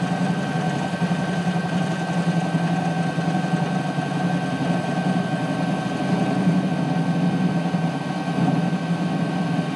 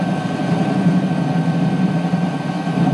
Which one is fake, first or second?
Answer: second